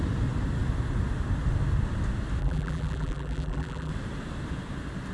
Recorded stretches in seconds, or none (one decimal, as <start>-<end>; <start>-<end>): 0.0-2.4; 3.9-5.1

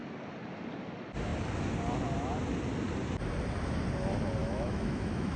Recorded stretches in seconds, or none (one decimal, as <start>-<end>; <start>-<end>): 0.0-4.4

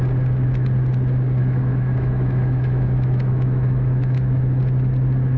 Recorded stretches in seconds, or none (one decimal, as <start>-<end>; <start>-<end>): 0.0-1.4; 4.6-5.4